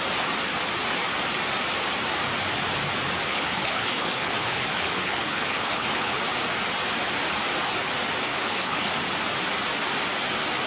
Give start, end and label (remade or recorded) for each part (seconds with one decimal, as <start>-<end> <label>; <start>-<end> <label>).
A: 0.0-3.3 recorded; 3.3-6.2 remade; 6.2-8.3 recorded; 8.3-8.9 remade; 8.9-10.7 recorded